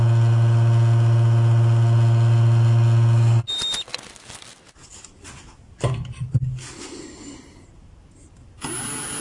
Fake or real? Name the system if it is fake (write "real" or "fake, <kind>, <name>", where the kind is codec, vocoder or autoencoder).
real